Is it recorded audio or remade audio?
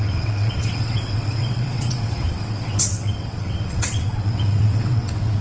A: remade